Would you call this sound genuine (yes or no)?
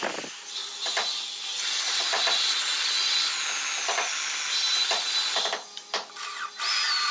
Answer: yes